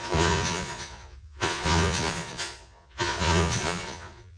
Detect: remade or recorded remade